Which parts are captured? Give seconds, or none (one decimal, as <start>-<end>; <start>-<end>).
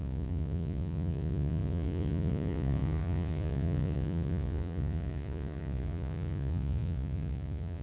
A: none